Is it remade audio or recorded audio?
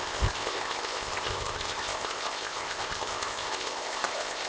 remade